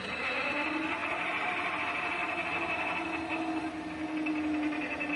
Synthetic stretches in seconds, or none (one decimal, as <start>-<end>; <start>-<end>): 1.0-1.8